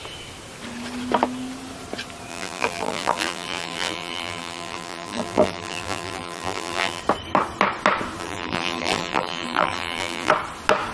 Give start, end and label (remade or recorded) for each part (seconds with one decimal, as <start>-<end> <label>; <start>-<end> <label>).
0.0-2.3 recorded; 2.3-7.0 remade; 7.0-8.2 recorded; 8.2-10.3 remade; 10.3-10.9 recorded